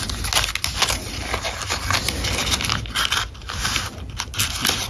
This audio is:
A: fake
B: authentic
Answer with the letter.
B